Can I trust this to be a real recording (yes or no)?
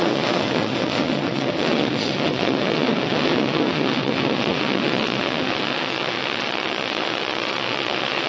no